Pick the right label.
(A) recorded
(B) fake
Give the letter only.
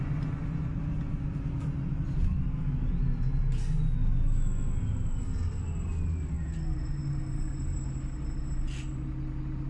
A